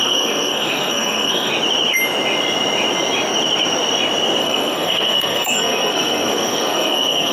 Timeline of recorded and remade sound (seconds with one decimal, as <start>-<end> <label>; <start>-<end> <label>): 0.0-1.5 remade; 1.5-4.4 recorded; 4.4-7.3 remade